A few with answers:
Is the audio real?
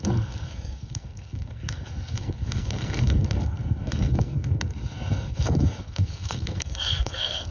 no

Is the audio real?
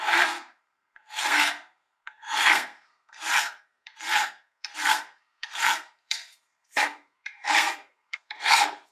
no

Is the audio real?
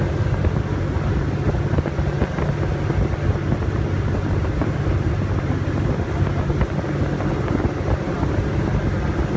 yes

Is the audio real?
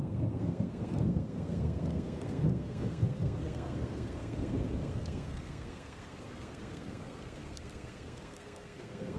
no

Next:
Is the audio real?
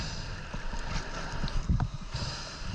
yes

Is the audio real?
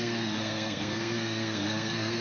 no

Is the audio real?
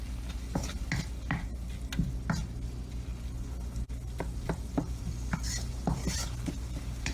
yes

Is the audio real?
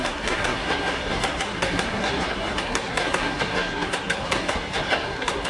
no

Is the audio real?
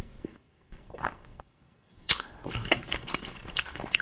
no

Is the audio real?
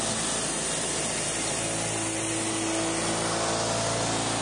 yes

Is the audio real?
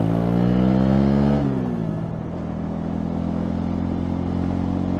yes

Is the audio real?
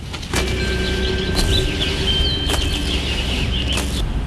yes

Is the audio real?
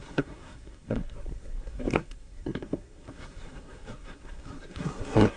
no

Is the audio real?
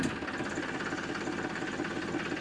yes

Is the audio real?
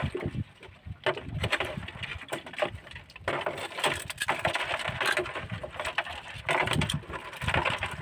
yes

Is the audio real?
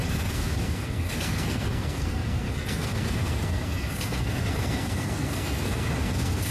no